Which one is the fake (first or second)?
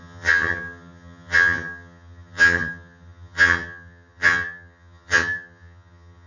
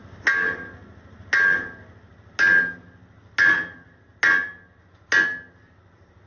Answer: first